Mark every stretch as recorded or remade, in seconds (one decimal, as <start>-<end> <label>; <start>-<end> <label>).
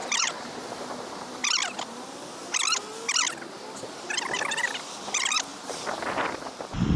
0.0-1.5 remade; 1.5-5.5 recorded; 5.5-6.5 remade; 6.5-7.0 recorded